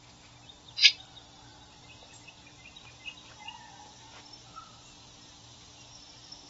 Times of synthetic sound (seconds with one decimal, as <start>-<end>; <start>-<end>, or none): 0.8-2.3